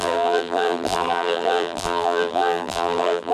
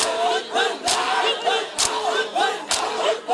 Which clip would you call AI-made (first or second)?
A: first